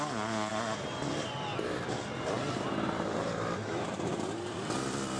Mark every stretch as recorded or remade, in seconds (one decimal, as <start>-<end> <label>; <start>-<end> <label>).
0.0-0.5 recorded; 0.5-1.1 remade; 1.1-1.5 recorded; 1.5-4.0 remade; 4.0-5.2 recorded